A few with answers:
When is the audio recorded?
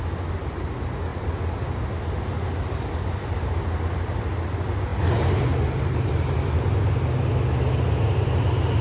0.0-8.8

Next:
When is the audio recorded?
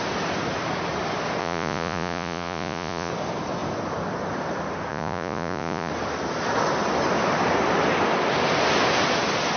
0.0-1.4; 3.1-4.9; 5.9-9.6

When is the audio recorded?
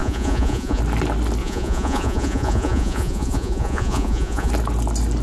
0.8-1.4; 4.5-5.2